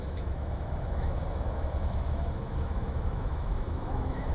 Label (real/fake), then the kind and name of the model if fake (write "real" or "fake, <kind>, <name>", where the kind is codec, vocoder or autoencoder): fake, autoencoder, DAC-VAE